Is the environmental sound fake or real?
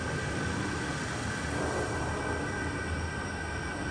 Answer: real